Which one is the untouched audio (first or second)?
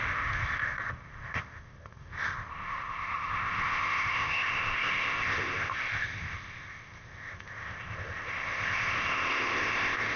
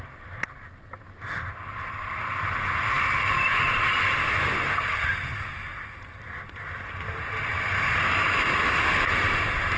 second